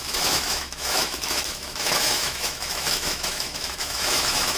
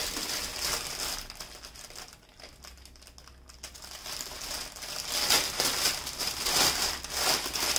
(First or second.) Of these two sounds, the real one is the second